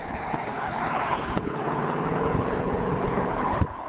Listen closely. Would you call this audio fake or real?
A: fake